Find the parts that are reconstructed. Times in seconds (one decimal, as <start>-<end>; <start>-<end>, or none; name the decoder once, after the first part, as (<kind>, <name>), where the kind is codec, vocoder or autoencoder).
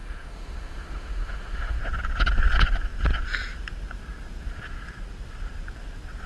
0.0-1.8 (autoencoder, DAC-VAE)